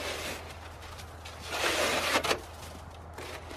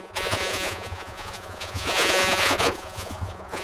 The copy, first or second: second